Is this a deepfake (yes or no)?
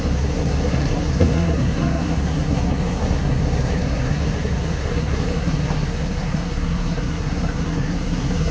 yes